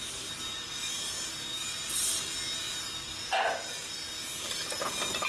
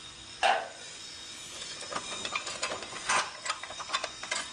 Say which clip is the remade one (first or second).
second